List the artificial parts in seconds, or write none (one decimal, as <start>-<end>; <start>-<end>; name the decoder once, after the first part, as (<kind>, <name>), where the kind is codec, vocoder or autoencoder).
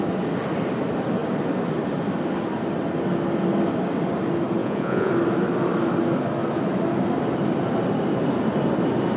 4.6-5.1 (vocoder, Vocos)